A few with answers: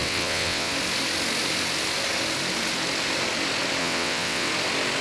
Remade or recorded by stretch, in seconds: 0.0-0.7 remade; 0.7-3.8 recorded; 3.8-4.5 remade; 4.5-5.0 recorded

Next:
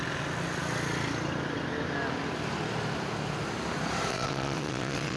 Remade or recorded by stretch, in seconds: 0.0-4.1 recorded; 4.1-5.2 remade

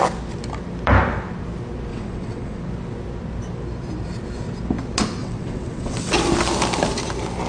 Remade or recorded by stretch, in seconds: 0.0-1.9 recorded; 1.9-2.6 remade; 2.6-5.2 recorded; 5.2-6.1 remade; 6.1-7.5 recorded

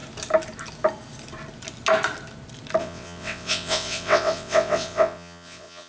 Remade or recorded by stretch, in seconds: 0.0-2.8 recorded; 2.8-5.9 remade